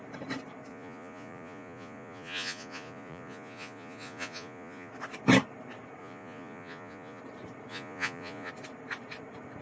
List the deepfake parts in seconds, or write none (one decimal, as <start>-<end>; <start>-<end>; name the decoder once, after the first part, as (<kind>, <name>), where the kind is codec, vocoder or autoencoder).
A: 0.7-4.9 (vocoder, Vocos); 6.0-7.2; 7.7-8.5